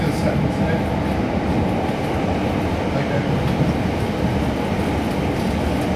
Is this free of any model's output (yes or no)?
yes